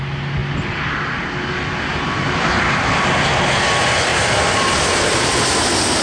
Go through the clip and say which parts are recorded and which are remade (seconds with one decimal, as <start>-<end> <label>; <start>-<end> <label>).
0.0-4.1 recorded; 4.1-5.5 remade; 5.5-6.0 recorded